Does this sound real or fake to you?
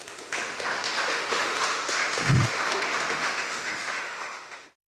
fake